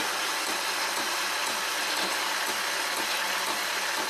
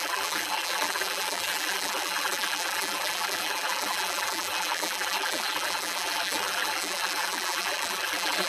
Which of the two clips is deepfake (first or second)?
second